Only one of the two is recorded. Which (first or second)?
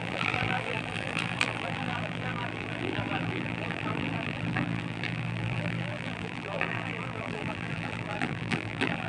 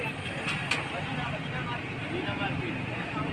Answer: second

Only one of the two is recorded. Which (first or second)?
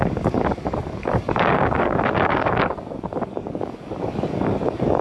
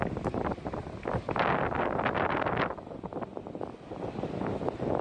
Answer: second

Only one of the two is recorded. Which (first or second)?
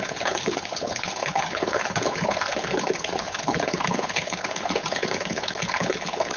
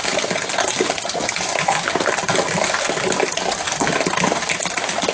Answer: second